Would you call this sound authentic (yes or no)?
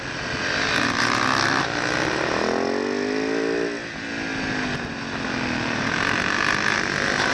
yes